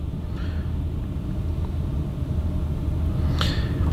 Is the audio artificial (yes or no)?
no